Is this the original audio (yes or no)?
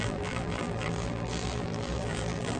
no